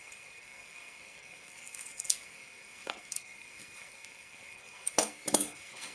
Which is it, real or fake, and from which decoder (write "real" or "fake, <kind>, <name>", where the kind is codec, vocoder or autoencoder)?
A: fake, codec, SNAC